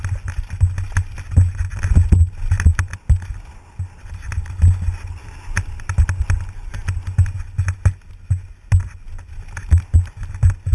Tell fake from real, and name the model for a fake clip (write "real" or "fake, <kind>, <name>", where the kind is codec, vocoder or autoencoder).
real